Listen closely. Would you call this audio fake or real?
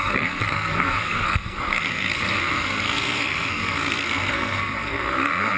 fake